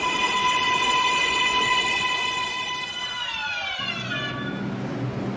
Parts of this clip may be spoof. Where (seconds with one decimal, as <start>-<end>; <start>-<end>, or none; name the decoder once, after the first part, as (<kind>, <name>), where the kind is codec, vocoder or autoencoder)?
0.5-2.7 (vocoder, Vocos); 3.4-4.1